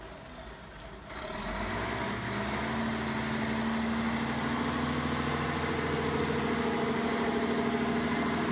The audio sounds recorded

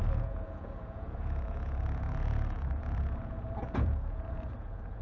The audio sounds remade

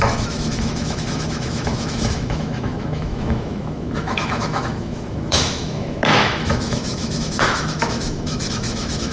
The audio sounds remade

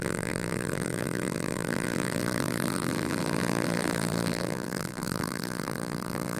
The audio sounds remade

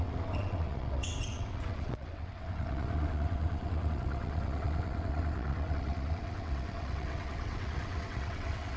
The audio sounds remade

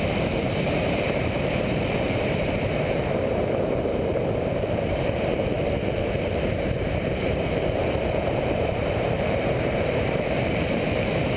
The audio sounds remade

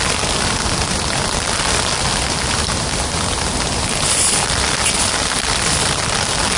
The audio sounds recorded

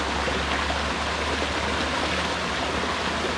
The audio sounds recorded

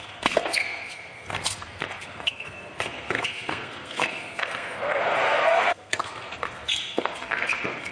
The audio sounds remade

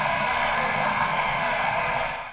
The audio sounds remade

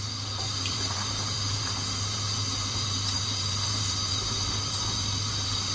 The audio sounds remade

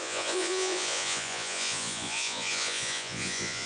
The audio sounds remade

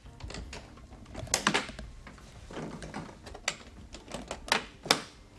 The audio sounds recorded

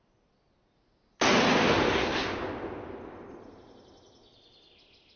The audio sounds recorded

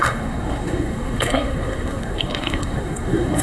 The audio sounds remade